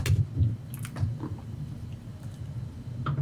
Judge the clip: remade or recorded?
recorded